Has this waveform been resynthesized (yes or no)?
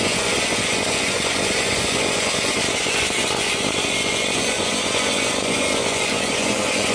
yes